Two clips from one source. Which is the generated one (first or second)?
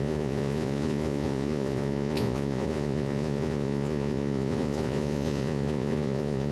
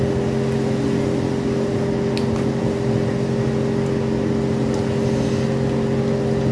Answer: first